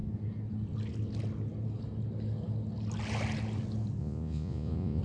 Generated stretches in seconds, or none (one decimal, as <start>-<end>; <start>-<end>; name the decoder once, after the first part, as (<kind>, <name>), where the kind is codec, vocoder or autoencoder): 4.0-5.0 (vocoder, Vocos)